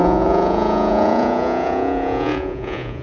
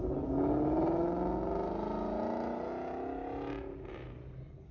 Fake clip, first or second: first